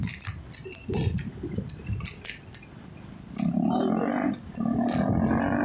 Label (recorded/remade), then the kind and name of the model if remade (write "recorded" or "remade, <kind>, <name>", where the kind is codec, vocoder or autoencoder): recorded